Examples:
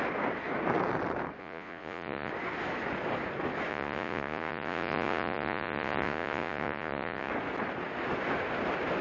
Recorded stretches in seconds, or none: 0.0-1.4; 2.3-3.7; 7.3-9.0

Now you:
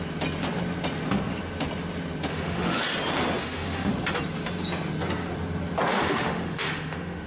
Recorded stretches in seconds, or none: 0.0-2.3; 2.8-3.4; 3.9-5.9

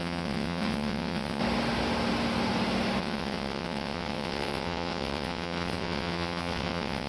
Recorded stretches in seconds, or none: 1.4-3.0

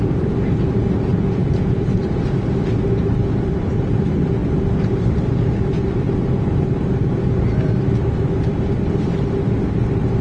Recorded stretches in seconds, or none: 0.0-1.1; 2.0-10.2

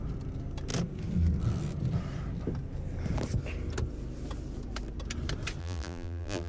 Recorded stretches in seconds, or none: 0.0-5.6

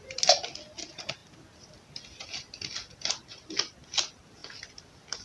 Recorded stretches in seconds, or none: 0.0-5.2